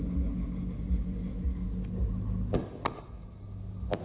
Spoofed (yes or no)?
no